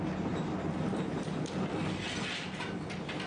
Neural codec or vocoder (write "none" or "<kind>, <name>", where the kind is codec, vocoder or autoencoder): none